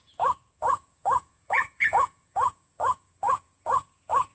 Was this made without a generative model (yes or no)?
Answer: no